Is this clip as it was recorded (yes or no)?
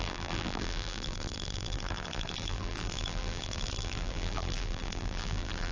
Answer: no